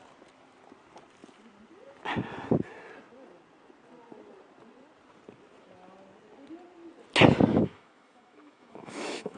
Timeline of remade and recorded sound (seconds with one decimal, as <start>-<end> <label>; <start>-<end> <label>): 0.0-7.5 recorded; 7.5-9.4 remade